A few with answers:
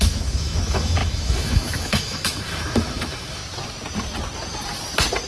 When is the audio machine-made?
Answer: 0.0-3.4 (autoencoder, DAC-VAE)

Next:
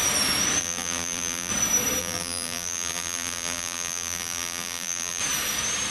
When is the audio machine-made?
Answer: 0.6-1.5 (vocoder, BigVGAN v2); 2.0-5.2

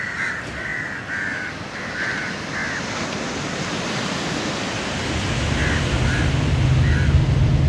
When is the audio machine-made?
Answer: none